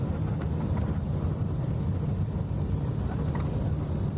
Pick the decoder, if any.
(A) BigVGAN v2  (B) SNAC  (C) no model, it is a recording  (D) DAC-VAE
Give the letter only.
C